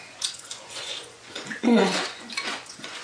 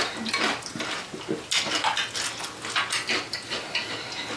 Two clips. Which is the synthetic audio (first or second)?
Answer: first